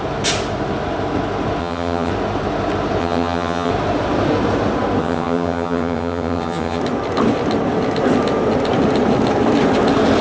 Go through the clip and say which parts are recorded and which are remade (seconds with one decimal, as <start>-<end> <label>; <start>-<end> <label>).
0.0-1.6 recorded; 1.6-2.1 remade; 2.1-3.0 recorded; 3.0-3.7 remade; 3.7-5.0 recorded; 5.0-6.8 remade; 6.8-10.2 recorded